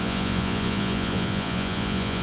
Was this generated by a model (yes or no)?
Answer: yes